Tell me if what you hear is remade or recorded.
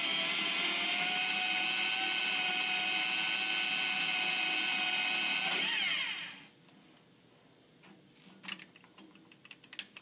recorded